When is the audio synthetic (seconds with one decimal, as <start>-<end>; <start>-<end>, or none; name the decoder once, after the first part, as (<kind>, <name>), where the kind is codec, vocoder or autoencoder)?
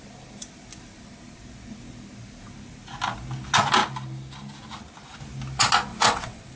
5.9-6.6 (vocoder, WaveNeXt)